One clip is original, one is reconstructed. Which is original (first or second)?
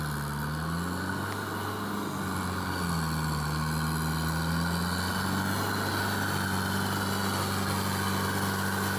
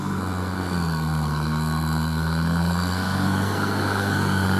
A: first